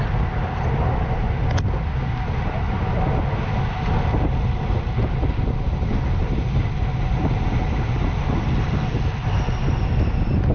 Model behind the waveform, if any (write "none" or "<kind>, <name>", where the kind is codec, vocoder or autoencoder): none